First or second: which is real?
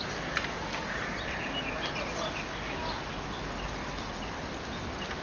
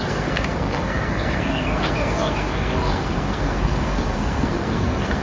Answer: first